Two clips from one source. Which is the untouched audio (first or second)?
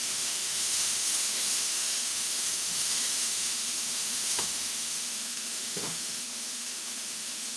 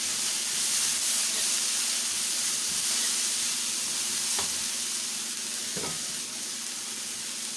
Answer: second